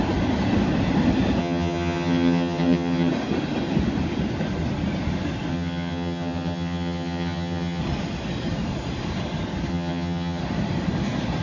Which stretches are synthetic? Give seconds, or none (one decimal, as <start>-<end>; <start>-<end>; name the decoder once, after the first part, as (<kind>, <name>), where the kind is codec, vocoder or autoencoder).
1.4-3.1 (vocoder, HiFi-GAN); 5.5-7.8; 9.7-10.4